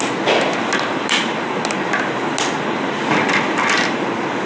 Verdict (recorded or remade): recorded